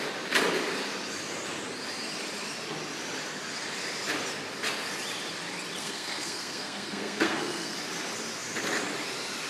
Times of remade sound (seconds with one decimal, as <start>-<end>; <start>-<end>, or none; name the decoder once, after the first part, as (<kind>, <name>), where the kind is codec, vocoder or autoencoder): 5.8-7.8 (codec, SNAC)